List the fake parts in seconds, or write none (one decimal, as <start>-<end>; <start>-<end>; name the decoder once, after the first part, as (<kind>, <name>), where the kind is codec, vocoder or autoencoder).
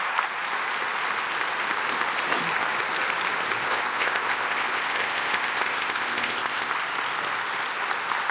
3.6-6.7 (codec, ZipCodec)